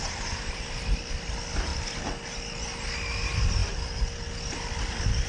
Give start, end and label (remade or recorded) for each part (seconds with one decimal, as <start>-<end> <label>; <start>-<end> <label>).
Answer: 0.0-5.3 recorded